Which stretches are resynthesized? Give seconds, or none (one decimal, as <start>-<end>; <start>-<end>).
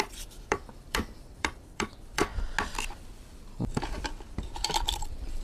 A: 0.0-2.3; 2.9-5.4